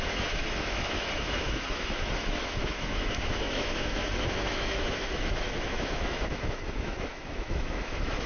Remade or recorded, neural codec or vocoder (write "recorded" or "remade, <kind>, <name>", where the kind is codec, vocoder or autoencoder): remade, autoencoder, DAC-VAE